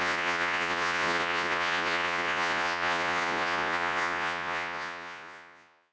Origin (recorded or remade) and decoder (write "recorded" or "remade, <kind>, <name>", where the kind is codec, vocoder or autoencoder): remade, vocoder, Vocos